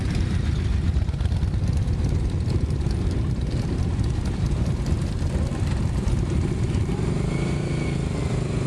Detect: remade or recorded remade